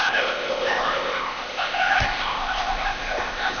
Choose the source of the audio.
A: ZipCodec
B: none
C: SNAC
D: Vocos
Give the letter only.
A